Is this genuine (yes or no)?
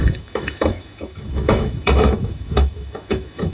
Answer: no